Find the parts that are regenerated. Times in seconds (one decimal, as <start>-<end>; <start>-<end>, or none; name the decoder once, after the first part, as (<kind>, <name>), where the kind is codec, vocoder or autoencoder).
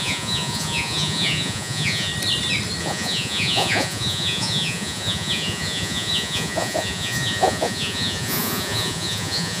0.0-2.1 (vocoder, Vocos); 2.8-9.6